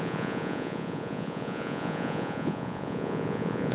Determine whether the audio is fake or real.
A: fake